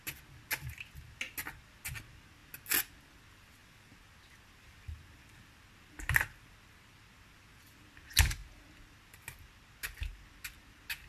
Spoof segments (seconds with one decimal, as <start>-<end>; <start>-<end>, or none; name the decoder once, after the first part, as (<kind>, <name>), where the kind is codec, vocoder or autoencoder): none